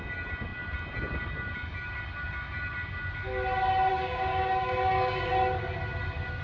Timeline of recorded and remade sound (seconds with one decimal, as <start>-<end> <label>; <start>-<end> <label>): 0.0-3.9 recorded; 3.9-5.3 remade; 5.3-6.4 recorded

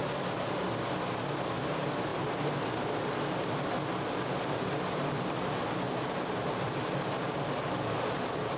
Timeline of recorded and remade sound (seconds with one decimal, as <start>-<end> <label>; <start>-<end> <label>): 0.0-8.6 recorded

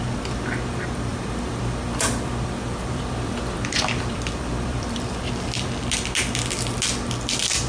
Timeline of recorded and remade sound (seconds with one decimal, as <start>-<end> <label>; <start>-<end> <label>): 0.0-1.1 recorded; 1.1-5.7 remade; 5.7-7.7 recorded

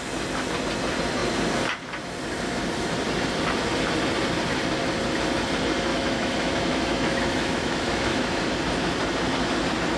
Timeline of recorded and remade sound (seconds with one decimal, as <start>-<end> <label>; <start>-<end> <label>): 0.0-5.9 recorded; 5.9-8.4 remade; 8.4-10.0 recorded

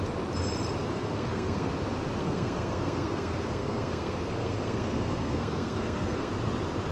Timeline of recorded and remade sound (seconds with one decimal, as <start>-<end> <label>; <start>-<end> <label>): 0.0-0.8 recorded; 0.8-1.7 remade; 1.7-2.2 recorded; 2.2-6.3 remade; 6.3-6.9 recorded

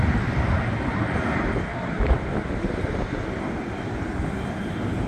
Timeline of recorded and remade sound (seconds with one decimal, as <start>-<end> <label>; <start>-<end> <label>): 0.0-5.1 remade